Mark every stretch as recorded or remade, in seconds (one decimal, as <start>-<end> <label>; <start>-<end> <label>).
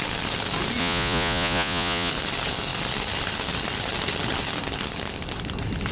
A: 0.0-0.8 recorded; 0.8-2.1 remade; 2.1-5.9 recorded